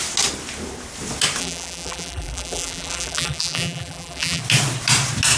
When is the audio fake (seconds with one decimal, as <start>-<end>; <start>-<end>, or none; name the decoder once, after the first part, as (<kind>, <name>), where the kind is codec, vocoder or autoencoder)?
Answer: 1.4-4.4 (vocoder, BigVGAN v2)